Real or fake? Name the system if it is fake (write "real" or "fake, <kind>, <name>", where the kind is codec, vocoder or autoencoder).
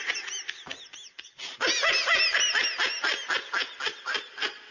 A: real